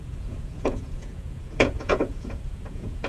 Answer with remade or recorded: remade